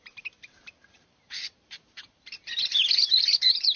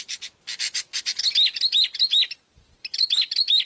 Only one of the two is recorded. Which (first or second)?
second